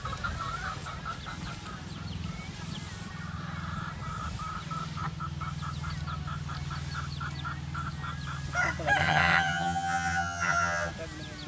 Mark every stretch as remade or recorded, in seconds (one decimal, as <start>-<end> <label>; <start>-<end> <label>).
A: 0.0-9.0 recorded; 9.0-10.9 remade; 10.9-11.5 recorded